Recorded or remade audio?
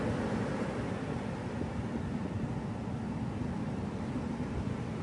recorded